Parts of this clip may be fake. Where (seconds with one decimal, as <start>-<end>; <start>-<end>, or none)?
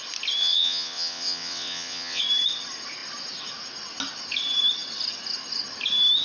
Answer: 0.4-2.2